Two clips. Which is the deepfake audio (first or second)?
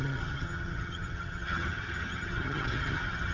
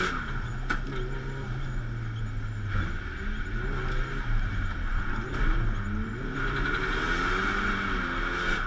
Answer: first